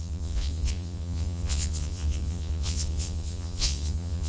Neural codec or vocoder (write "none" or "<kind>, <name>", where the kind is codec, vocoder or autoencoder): vocoder, Vocos